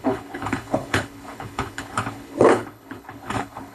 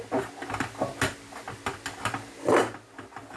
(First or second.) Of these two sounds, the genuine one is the second